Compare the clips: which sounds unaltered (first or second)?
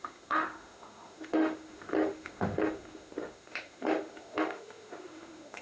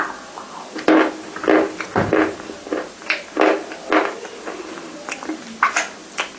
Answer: second